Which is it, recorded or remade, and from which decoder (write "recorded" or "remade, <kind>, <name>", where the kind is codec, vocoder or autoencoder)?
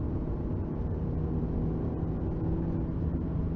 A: recorded